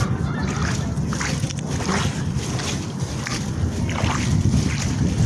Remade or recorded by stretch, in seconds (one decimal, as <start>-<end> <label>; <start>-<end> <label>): 0.0-5.3 recorded

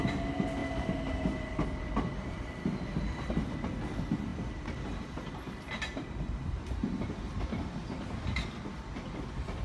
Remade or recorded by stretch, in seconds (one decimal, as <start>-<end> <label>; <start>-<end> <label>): 0.0-4.3 recorded; 4.3-8.2 remade; 8.2-9.6 recorded

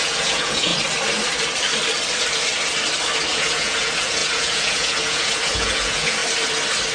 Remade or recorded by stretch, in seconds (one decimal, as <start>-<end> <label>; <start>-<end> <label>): 0.0-0.7 remade; 0.7-3.3 recorded; 3.3-6.2 remade; 6.2-6.9 recorded